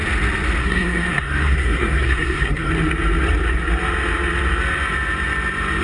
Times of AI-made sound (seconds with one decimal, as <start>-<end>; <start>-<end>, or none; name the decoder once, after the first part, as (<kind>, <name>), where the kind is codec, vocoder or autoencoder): 0.6-2.7 (codec, SNAC)